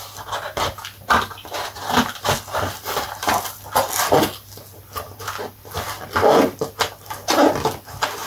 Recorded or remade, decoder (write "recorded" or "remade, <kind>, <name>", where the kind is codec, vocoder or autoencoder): recorded